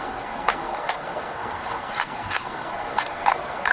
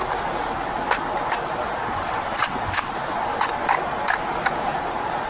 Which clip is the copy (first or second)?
first